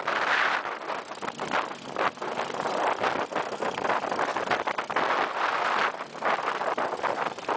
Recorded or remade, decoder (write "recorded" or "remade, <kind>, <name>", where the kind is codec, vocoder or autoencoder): recorded